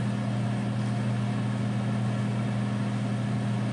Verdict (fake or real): real